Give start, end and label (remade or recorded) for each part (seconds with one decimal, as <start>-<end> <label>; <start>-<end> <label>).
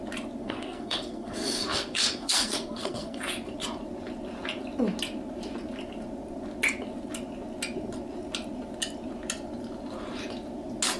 0.0-0.4 recorded; 0.4-3.2 remade; 3.2-11.0 recorded